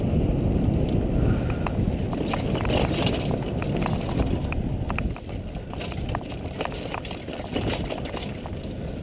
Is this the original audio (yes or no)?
yes